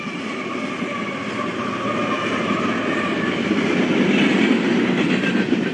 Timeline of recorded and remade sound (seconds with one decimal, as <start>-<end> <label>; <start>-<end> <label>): 0.0-5.7 recorded